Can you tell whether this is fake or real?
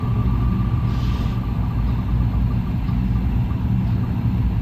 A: real